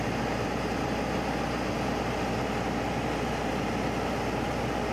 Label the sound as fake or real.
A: real